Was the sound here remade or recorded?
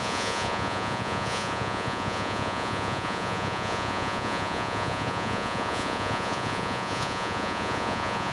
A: remade